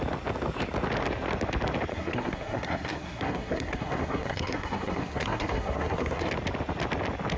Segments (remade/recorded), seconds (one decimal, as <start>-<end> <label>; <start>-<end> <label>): 0.0-1.9 recorded; 1.9-6.3 remade; 6.3-7.4 recorded